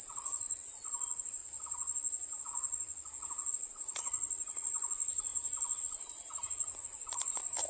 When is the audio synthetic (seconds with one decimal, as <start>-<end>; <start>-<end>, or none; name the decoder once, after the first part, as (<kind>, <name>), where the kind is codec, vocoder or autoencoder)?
0.0-1.4 (vocoder, BigVGAN v2); 3.5-5.3; 5.8-7.7